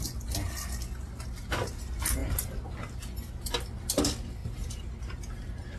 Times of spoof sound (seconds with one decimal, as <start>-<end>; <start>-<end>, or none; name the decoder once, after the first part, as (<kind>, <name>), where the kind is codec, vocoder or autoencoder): none